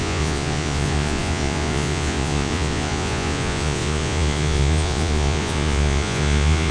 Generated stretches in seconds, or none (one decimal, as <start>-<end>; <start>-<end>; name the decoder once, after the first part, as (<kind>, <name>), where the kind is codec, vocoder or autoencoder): 0.0-6.7 (vocoder, Vocos)